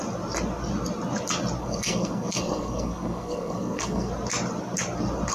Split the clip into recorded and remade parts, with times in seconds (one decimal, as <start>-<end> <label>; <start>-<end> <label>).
0.0-1.6 recorded; 1.6-4.1 remade; 4.1-5.3 recorded